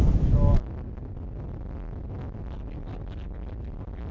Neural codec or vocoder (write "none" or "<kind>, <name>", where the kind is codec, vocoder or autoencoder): none